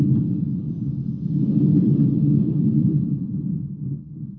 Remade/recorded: remade